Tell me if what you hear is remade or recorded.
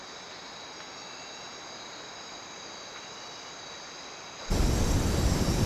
remade